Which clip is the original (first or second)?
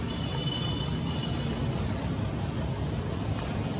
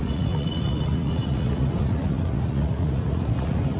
first